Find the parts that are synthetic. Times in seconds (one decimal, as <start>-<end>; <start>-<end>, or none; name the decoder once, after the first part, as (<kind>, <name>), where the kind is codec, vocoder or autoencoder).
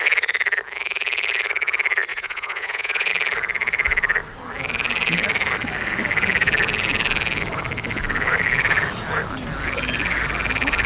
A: 2.1-3.1 (vocoder, Vocos)